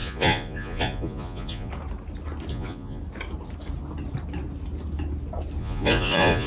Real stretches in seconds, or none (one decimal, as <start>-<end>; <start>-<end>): 1.7-2.5; 3.0-5.6